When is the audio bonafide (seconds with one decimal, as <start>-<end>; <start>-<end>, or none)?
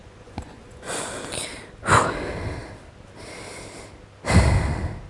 1.1-5.1